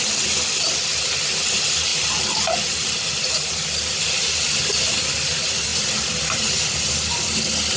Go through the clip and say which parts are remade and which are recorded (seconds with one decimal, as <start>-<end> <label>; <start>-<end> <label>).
0.0-1.9 recorded; 1.9-4.6 remade; 4.6-5.7 recorded; 5.7-6.4 remade; 6.4-7.8 recorded